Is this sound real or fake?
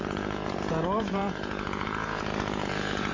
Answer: fake